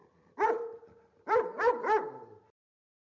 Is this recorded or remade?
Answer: recorded